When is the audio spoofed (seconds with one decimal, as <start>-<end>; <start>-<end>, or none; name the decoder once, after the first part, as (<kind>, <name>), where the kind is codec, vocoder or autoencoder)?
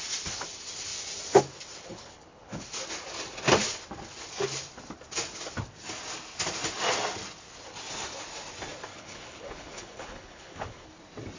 1.9-2.7 (codec, HILCodec); 8.9-10.9